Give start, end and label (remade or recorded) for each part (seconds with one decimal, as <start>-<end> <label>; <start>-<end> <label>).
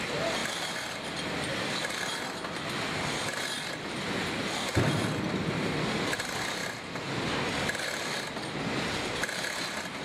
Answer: 0.0-10.0 recorded